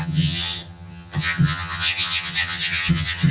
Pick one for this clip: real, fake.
fake